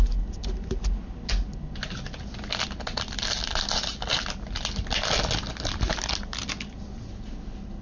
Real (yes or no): yes